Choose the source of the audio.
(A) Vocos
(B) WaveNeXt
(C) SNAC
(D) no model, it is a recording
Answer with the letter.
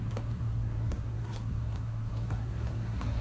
C